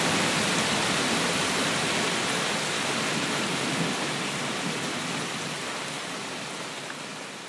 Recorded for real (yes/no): yes